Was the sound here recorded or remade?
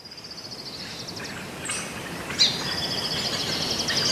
recorded